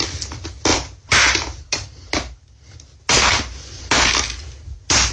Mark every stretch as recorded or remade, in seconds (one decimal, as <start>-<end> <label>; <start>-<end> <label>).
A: 0.0-5.1 recorded